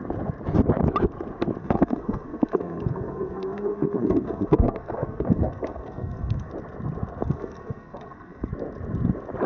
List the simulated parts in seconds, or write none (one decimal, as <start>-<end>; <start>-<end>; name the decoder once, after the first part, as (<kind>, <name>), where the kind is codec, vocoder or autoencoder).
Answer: 1.6-6.5 (codec, SNAC); 7.2-8.5